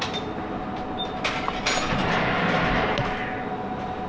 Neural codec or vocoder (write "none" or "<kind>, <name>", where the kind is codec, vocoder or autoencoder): none